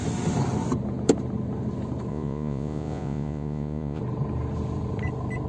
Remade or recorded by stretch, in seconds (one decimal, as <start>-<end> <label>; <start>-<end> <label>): 0.0-2.1 recorded; 2.1-4.0 remade; 4.0-5.5 recorded

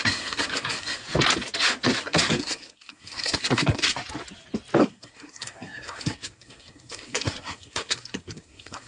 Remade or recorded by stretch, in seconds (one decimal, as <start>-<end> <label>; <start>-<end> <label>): 0.0-1.0 remade; 1.0-2.0 recorded; 2.0-4.0 remade; 4.0-4.8 recorded; 4.8-8.9 remade

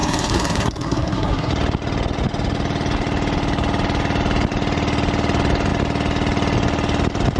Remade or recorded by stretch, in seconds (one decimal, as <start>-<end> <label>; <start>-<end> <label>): 0.0-1.5 remade; 1.5-7.4 recorded

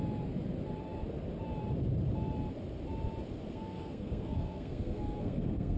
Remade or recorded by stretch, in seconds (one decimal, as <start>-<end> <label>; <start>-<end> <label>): 0.0-3.5 recorded; 3.5-5.8 remade

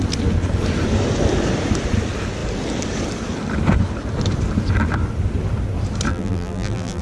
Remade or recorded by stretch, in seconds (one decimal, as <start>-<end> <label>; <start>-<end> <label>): 0.0-6.1 recorded; 6.1-7.0 remade